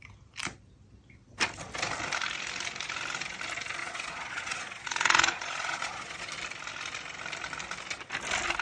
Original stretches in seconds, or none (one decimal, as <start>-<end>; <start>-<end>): 0.0-3.8; 6.3-8.6